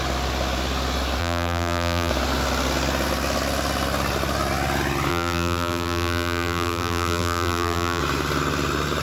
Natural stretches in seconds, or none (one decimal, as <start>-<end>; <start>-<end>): 0.0-1.2; 2.1-5.1; 8.0-9.0